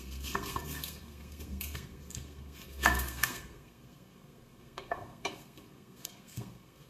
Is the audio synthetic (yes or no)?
yes